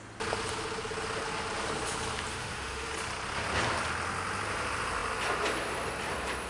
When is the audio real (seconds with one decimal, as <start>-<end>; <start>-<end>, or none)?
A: 0.0-2.3; 2.9-6.5